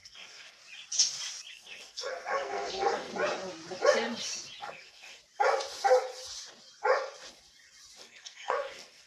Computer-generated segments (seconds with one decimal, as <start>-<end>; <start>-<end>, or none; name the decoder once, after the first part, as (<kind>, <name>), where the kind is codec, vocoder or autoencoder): 0.0-0.6 (codec, SNAC); 1.5-3.1; 4.6-5.2; 8.0-9.1